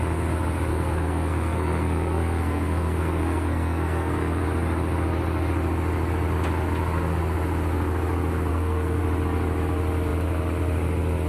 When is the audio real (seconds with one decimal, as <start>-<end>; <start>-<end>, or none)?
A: 0.0-0.7; 4.4-8.5; 9.0-11.3